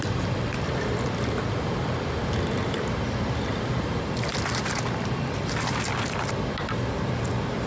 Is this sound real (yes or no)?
yes